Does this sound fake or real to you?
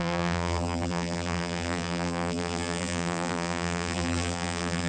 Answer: fake